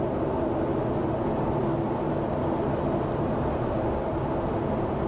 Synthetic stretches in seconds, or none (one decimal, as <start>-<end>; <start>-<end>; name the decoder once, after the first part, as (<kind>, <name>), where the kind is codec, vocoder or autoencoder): none